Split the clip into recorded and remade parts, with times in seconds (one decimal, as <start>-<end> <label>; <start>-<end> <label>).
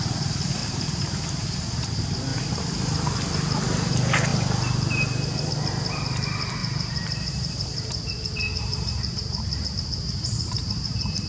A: 0.0-0.6 recorded; 0.6-1.2 remade; 1.2-6.6 recorded; 6.6-11.3 remade